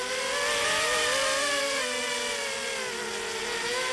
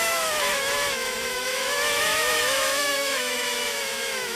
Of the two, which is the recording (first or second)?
first